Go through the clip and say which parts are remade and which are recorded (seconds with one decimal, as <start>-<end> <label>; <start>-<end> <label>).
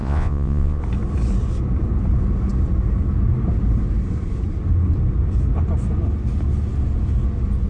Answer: 0.0-0.8 remade; 0.8-7.7 recorded